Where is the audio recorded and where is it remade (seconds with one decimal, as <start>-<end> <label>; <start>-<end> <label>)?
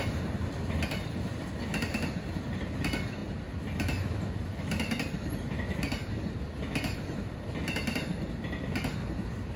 0.0-2.3 remade; 2.3-9.6 recorded